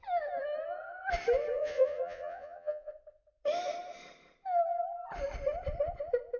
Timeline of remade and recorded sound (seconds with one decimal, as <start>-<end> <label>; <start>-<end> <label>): 0.0-1.5 recorded; 1.5-2.9 remade; 2.9-6.4 recorded